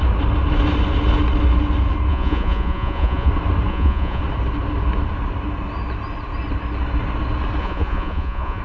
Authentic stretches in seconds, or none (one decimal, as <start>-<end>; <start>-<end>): 0.0-2.1; 3.3-3.7; 4.2-7.6